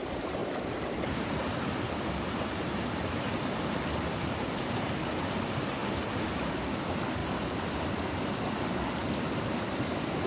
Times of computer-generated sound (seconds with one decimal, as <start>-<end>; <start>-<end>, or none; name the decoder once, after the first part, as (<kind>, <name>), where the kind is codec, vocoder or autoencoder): 0.4-3.3 (vocoder, BigVGAN v2); 5.8-6.5; 7.2-7.8